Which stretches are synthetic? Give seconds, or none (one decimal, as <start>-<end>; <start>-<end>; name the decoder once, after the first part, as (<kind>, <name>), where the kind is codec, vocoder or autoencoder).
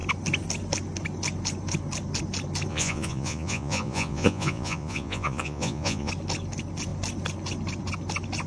2.7-6.1 (vocoder, Vocos)